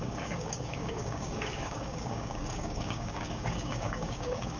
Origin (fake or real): fake